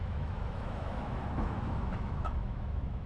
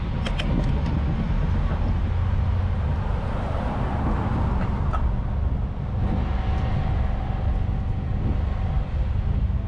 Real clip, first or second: second